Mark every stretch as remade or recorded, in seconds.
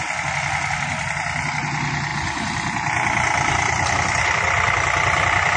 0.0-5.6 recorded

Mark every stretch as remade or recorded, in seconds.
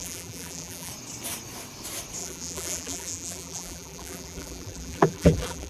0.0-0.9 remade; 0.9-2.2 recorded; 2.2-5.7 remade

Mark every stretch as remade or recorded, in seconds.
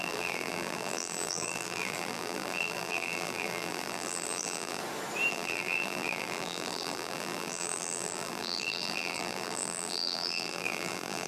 0.0-4.8 remade; 4.8-5.3 recorded; 5.3-11.3 remade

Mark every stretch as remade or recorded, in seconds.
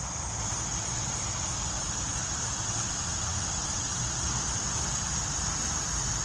0.0-0.7 recorded; 0.7-2.6 remade; 2.6-3.3 recorded; 3.3-3.8 remade; 3.8-4.9 recorded; 4.9-5.5 remade; 5.5-6.2 recorded